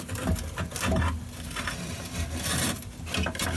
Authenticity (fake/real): real